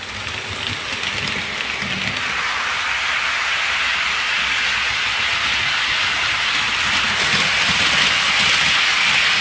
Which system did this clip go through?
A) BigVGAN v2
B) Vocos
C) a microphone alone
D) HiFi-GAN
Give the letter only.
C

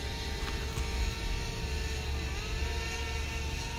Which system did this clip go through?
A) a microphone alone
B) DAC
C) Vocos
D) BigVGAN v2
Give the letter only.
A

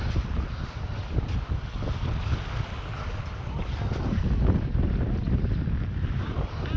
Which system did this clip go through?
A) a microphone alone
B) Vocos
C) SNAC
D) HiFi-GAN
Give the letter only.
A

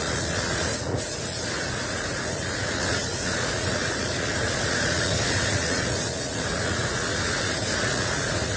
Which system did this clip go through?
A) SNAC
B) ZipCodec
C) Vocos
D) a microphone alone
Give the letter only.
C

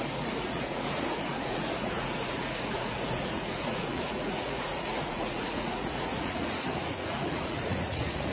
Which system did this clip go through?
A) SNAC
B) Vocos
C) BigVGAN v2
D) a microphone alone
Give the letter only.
B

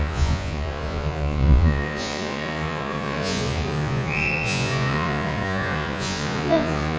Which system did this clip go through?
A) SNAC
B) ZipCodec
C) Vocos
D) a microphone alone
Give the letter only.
C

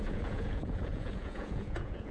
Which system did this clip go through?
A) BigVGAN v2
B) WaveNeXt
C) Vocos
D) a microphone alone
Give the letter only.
C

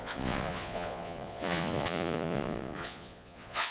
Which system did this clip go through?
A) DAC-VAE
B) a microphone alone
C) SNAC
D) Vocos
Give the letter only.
D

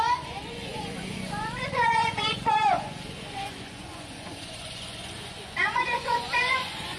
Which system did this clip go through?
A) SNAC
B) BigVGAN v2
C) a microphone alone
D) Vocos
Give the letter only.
D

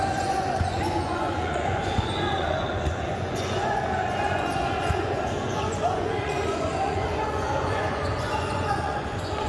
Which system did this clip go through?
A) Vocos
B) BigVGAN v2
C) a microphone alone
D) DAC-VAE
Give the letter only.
A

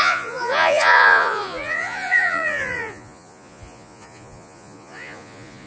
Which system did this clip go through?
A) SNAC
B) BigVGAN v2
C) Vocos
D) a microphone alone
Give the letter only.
C